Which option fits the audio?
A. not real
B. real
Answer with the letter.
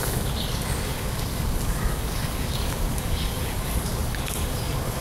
A